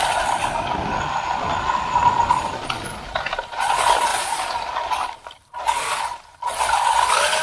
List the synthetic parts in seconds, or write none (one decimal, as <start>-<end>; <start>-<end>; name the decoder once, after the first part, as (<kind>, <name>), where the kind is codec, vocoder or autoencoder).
none